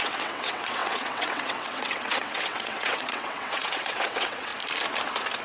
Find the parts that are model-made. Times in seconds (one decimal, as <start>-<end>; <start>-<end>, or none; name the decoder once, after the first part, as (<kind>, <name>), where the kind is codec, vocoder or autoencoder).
0.0-4.5 (vocoder, WaveNeXt)